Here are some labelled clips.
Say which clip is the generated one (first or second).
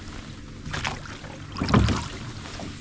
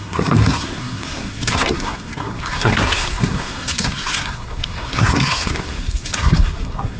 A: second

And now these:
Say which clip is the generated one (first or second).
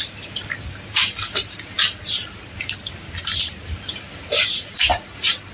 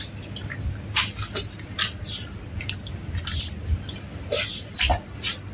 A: first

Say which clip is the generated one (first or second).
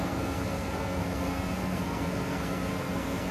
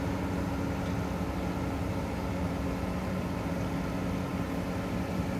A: first